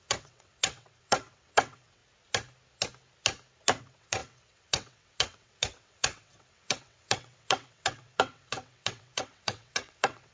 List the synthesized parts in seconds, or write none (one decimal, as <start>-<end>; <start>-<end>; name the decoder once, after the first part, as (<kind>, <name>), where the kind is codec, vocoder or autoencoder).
0.0-2.0 (vocoder, WaveNeXt); 3.8-10.3